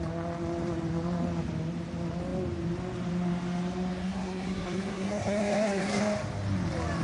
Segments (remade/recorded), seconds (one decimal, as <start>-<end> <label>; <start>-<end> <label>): 0.0-4.0 recorded; 4.0-6.0 remade; 6.0-7.0 recorded